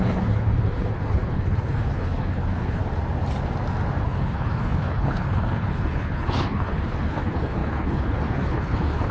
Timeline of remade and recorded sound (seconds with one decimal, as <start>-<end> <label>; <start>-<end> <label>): 0.0-2.8 remade; 2.8-4.0 recorded; 4.0-9.1 remade